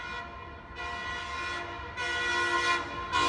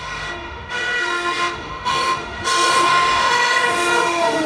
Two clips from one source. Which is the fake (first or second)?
second